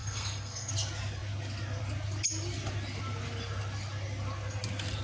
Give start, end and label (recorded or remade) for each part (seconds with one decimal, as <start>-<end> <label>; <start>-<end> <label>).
0.0-0.7 remade; 0.7-5.0 recorded